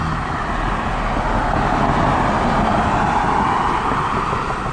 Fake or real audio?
real